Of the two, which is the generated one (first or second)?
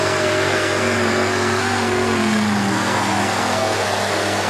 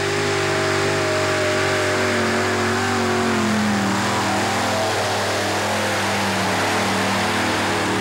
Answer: first